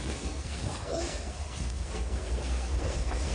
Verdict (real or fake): fake